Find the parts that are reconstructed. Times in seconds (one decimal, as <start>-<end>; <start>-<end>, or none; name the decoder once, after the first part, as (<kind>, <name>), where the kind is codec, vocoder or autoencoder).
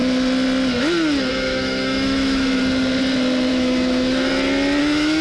1.3-2.6 (autoencoder, DAC-VAE); 3.5-4.3; 4.8-5.2